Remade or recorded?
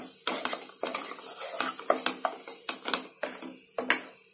recorded